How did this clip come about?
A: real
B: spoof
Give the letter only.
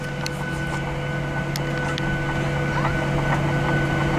A